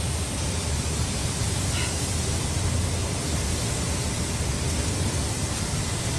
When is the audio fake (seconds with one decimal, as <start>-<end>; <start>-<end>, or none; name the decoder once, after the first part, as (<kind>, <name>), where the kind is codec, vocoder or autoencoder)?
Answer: 1.2-2.6 (vocoder, BigVGAN v2)